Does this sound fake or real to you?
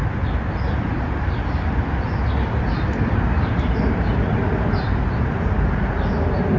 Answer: real